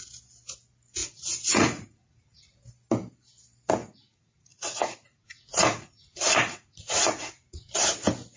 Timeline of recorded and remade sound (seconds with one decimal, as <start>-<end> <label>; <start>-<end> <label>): 0.0-1.0 recorded; 1.0-2.6 remade; 2.6-3.8 recorded; 3.8-7.7 remade; 7.7-8.4 recorded